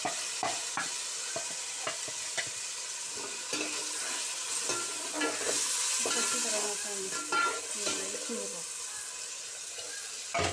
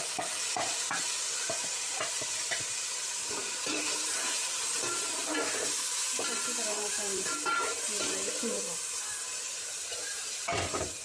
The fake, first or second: second